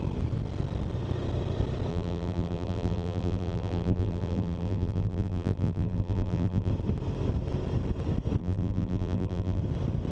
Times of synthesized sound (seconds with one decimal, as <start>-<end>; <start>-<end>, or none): 1.9-6.7; 8.4-9.6